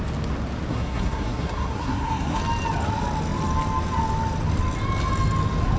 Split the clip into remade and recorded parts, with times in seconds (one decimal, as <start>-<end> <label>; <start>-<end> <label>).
0.0-0.7 recorded; 0.7-2.4 remade; 2.4-5.8 recorded